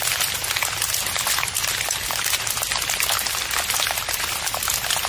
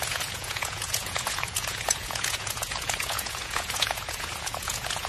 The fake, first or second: second